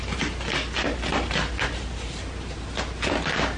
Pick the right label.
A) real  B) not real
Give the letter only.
A